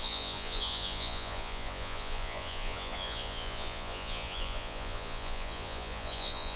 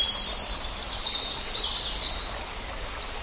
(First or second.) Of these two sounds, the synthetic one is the first